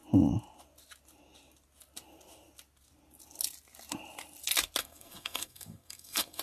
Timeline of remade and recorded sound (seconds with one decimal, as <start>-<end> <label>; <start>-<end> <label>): 0.0-4.8 recorded; 4.8-6.4 remade